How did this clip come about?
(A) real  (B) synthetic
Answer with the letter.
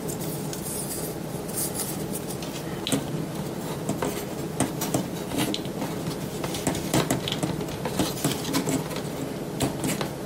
A